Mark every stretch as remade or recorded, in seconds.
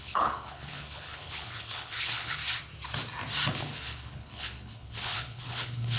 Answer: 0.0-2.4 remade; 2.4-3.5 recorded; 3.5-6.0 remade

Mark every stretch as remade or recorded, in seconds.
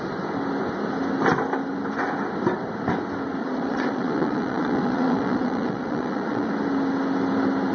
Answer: 0.0-3.4 recorded; 3.4-6.5 remade; 6.5-7.7 recorded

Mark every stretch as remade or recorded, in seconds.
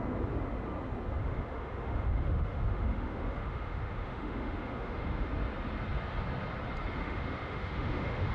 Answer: 0.0-1.2 recorded; 1.2-5.3 remade; 5.3-7.0 recorded; 7.0-8.3 remade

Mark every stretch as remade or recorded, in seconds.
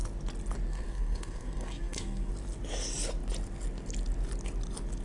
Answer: 0.0-0.7 recorded; 0.7-2.3 remade; 2.3-5.0 recorded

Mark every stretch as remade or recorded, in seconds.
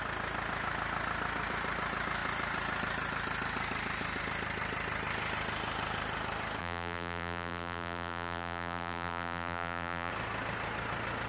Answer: 0.0-6.6 recorded; 6.6-10.1 remade; 10.1-11.3 recorded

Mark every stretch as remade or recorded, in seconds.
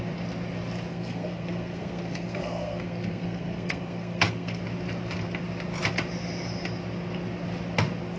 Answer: 0.0-0.9 recorded; 0.9-4.6 remade; 4.6-8.2 recorded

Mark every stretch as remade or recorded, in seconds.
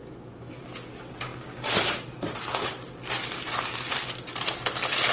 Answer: 0.0-0.6 remade; 0.6-5.1 recorded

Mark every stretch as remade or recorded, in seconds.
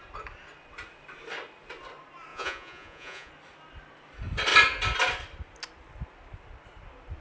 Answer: 0.0-2.3 recorded; 2.3-3.3 remade; 3.3-7.2 recorded